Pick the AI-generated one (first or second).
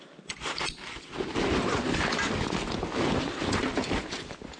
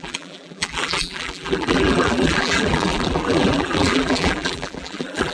second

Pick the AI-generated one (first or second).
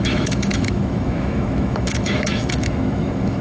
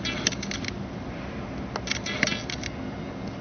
first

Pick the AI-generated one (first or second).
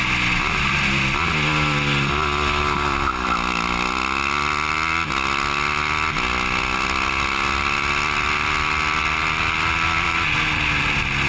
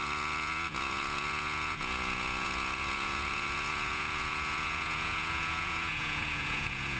second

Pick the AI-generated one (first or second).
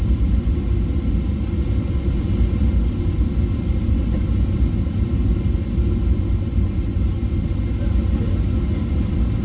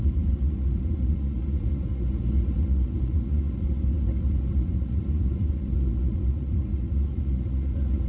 second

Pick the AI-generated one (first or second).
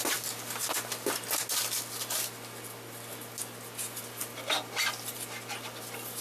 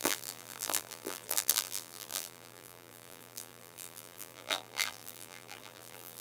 second